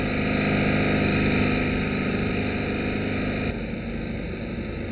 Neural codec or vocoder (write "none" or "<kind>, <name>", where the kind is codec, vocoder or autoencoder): none